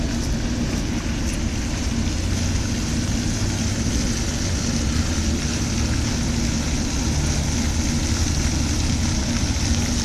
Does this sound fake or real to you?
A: real